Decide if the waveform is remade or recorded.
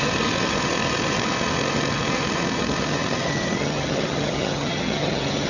remade